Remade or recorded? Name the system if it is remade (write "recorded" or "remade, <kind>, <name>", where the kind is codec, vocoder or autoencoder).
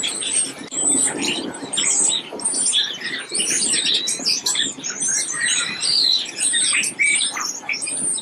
remade, vocoder, BigVGAN v2